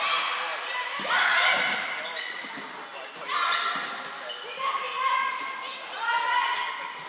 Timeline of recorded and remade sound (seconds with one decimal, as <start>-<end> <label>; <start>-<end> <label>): 0.0-0.5 recorded; 0.5-2.0 remade; 2.0-7.1 recorded